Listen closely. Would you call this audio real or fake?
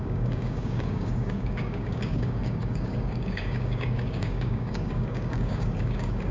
fake